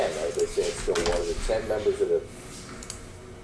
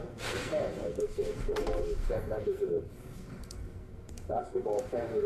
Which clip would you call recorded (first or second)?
first